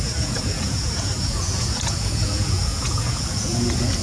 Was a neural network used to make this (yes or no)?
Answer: yes